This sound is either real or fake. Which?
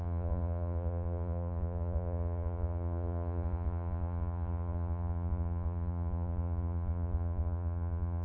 fake